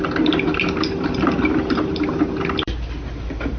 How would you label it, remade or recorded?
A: remade